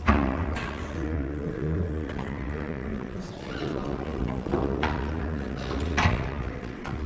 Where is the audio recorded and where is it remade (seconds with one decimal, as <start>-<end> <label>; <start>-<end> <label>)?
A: 0.0-7.1 remade